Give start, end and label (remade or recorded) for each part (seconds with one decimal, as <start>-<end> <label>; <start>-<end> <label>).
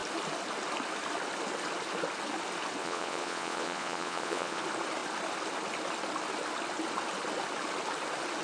0.0-2.8 recorded; 2.8-4.6 remade; 4.6-8.4 recorded